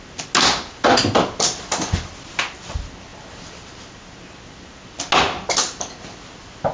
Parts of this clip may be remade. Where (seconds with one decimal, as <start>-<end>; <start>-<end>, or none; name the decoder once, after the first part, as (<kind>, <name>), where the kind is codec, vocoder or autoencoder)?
none